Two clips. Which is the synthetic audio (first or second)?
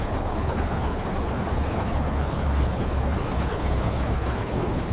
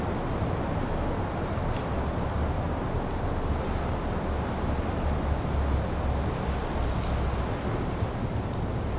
first